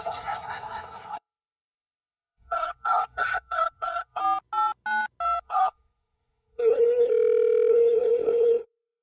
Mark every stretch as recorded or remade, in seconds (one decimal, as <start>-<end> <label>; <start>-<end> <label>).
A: 0.0-4.2 remade; 4.2-5.4 recorded; 5.4-7.1 remade; 7.1-7.7 recorded; 7.7-9.0 remade